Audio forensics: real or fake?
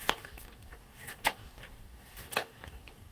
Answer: fake